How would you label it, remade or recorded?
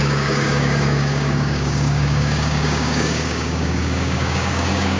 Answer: remade